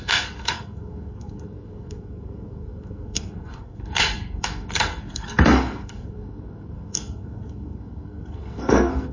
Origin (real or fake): fake